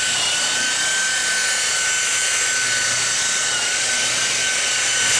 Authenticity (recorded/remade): recorded